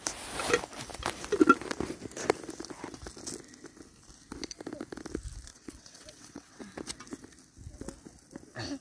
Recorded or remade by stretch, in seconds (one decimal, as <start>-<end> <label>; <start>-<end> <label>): 0.0-5.5 recorded; 5.5-6.6 remade; 6.6-8.8 recorded